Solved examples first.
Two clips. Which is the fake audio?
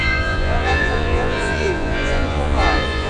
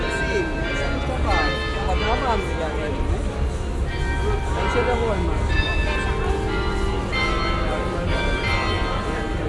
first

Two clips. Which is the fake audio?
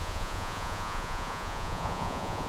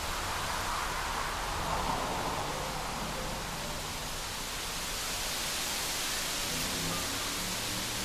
first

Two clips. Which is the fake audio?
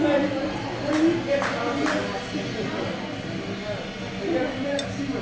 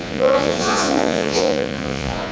second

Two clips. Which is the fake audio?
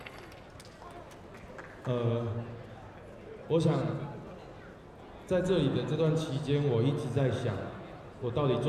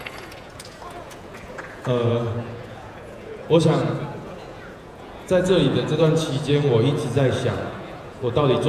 second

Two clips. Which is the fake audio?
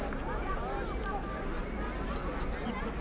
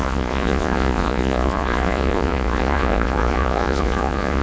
second